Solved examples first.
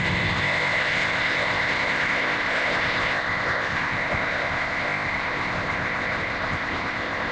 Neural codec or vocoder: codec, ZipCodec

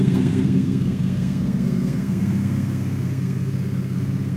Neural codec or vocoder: codec, SNAC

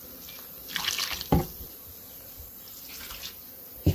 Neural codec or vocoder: none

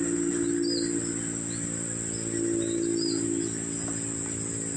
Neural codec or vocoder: none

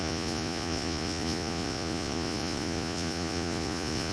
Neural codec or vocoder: vocoder, Vocos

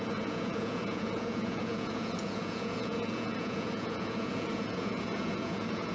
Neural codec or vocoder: vocoder, Vocos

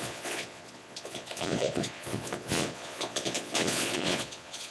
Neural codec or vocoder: vocoder, Vocos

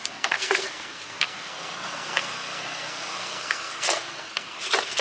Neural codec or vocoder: codec, SNAC